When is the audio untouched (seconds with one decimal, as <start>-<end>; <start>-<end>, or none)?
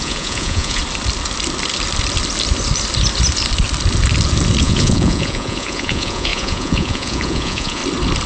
0.8-4.6; 7.8-8.3